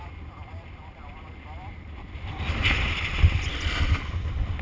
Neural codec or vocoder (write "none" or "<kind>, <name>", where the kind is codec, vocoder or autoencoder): none